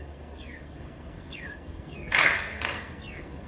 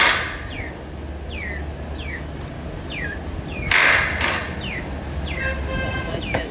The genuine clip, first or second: second